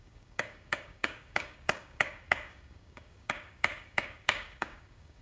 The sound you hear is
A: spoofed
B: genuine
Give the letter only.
A